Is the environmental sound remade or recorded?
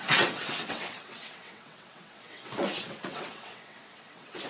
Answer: remade